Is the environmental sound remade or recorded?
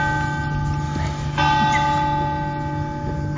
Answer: recorded